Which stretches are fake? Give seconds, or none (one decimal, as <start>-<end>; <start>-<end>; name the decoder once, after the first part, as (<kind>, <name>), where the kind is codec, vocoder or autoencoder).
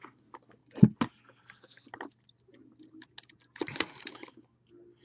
none